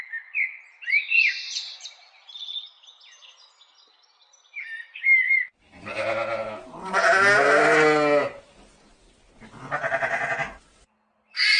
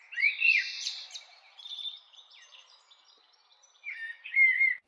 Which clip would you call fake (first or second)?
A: second